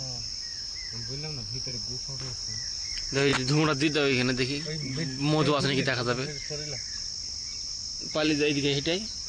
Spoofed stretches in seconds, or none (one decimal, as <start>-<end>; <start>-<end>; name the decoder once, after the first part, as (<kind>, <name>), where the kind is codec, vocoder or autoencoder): none